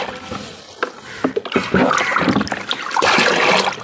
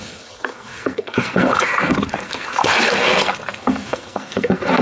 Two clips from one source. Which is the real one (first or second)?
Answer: first